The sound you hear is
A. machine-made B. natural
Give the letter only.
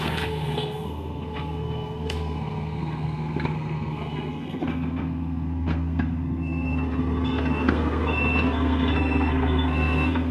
A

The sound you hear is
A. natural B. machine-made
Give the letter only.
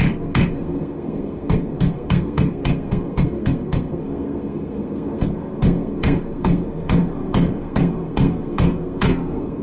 B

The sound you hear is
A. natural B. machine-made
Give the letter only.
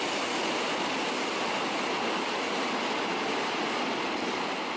A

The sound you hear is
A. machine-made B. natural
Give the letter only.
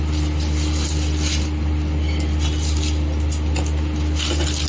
B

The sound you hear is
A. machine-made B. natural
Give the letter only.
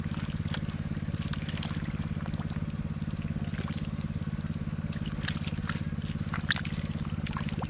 B